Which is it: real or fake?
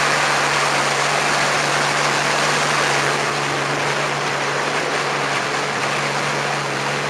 real